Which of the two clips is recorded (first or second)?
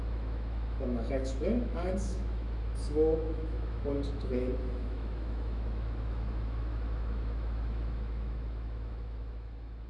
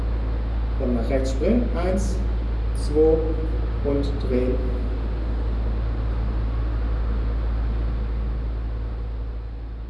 second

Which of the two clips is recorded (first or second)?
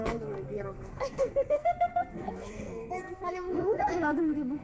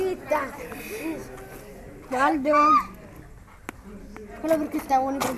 second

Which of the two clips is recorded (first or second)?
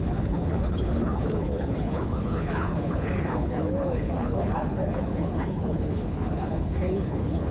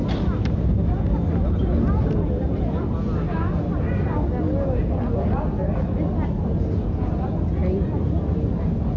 second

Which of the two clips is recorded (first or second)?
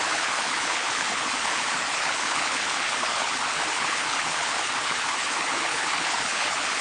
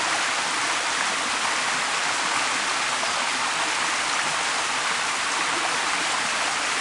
second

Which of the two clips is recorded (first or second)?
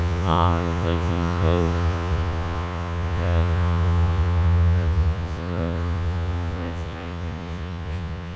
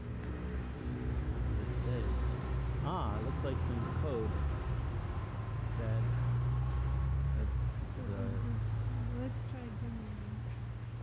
second